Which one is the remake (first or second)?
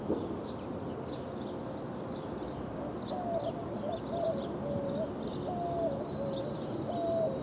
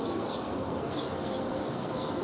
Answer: second